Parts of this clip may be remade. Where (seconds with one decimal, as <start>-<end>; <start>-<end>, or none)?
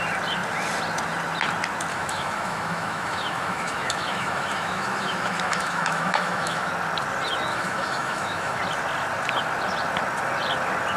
1.9-6.7; 7.5-8.6